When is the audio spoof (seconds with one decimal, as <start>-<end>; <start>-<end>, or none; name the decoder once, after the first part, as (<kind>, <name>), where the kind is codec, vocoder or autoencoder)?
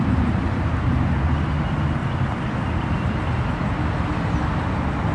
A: none